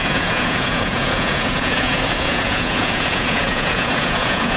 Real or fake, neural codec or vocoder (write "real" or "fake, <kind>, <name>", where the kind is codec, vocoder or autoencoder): fake, vocoder, Vocos